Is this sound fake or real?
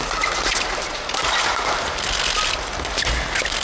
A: real